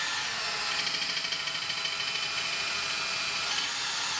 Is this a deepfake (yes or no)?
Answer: no